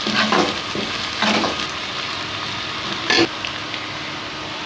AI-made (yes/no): no